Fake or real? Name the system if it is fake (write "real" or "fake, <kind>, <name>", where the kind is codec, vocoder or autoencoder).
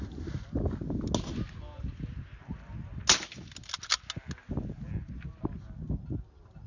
real